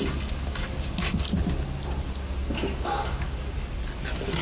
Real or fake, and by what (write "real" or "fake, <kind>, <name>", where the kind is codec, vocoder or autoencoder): real